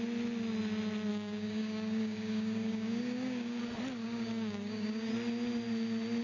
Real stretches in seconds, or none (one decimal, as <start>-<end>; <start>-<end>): 0.0-1.1; 3.6-4.0; 5.1-6.2